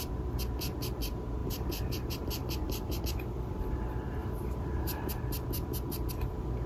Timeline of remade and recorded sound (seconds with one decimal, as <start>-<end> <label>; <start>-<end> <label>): 0.0-1.4 recorded; 1.4-3.0 remade; 3.0-4.2 recorded; 4.2-5.1 remade; 5.1-6.7 recorded